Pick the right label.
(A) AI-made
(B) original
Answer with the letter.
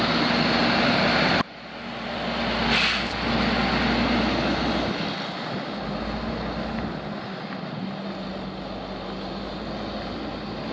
B